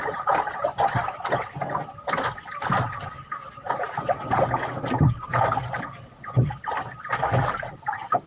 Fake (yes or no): no